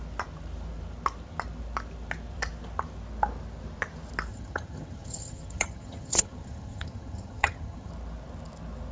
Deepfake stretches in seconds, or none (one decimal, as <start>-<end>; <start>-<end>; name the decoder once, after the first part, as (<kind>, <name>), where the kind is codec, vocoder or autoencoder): 4.3-7.9 (vocoder, HiFi-GAN)